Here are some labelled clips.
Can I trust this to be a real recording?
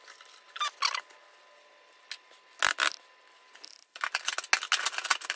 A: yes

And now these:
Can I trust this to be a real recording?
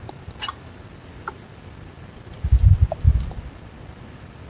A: yes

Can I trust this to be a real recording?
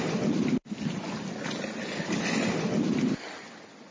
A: yes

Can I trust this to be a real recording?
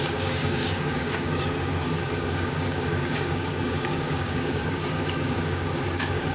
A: no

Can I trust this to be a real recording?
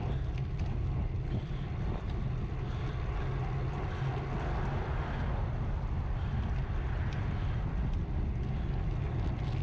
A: yes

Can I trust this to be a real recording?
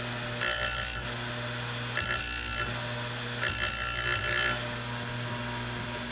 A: yes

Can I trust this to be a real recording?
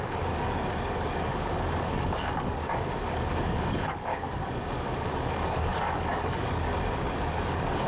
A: no